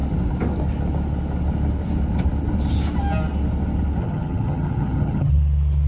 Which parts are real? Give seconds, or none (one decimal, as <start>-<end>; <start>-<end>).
0.0-4.0; 5.3-5.9